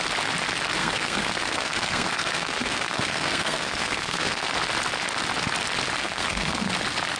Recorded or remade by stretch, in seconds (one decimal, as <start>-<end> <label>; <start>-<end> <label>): 0.0-0.8 recorded; 0.8-4.5 remade; 4.5-6.0 recorded; 6.0-6.7 remade; 6.7-7.2 recorded